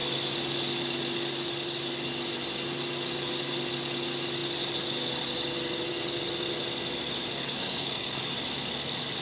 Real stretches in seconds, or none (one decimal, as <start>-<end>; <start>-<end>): 0.0-7.3; 8.2-9.2